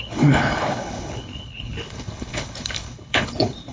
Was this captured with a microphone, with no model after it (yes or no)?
no